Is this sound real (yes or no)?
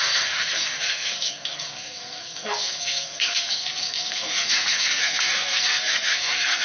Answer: no